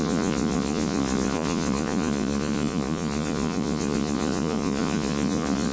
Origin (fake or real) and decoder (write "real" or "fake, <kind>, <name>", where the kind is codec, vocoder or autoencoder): fake, vocoder, Vocos